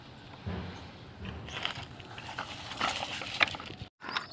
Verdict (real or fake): real